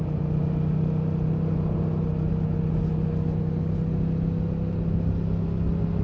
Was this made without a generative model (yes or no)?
yes